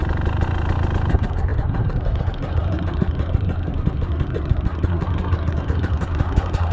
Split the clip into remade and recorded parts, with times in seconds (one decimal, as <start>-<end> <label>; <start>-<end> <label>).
0.0-1.1 recorded; 1.1-6.7 remade